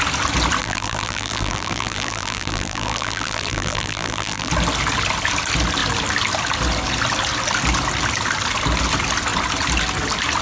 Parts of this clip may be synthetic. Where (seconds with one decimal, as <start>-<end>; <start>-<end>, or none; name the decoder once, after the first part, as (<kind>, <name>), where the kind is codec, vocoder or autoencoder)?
0.6-4.5 (vocoder, BigVGAN v2)